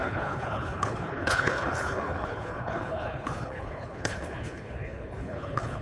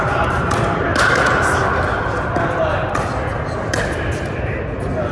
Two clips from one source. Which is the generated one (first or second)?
first